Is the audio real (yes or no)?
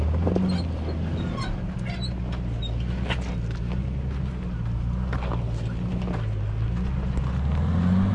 yes